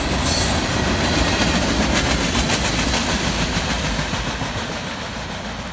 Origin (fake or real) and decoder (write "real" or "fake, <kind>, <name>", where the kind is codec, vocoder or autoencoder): real